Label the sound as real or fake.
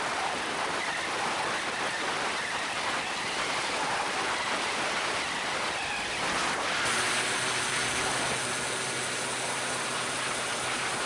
real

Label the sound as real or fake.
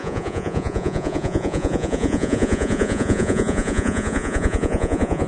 fake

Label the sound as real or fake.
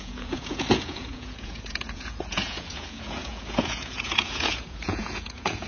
fake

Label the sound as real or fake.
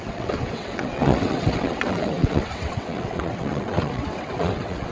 fake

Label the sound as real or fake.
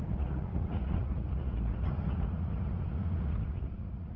fake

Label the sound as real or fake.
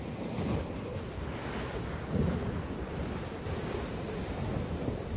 real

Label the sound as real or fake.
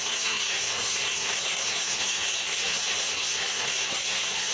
fake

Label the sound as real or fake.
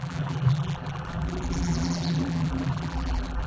fake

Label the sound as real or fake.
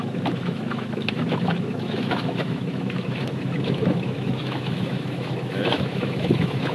fake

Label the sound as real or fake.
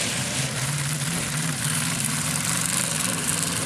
fake